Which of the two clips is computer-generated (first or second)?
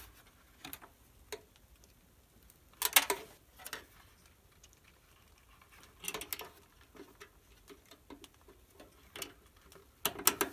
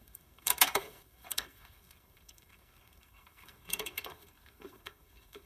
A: second